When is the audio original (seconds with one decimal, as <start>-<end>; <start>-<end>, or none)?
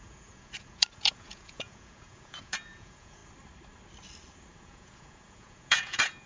3.2-4.6